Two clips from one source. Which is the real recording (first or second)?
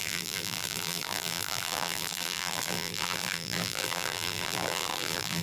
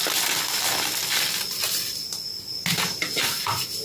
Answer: second